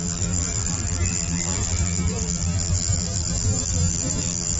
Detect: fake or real fake